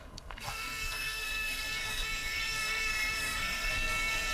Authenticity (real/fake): fake